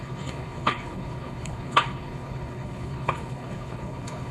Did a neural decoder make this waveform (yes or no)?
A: yes